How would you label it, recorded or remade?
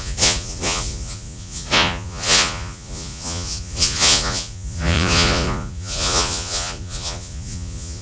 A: remade